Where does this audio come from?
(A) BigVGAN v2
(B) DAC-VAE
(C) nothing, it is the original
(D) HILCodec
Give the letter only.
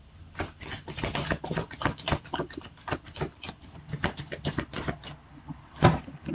C